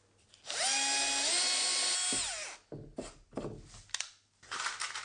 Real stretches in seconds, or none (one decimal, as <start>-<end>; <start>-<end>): 0.0-5.0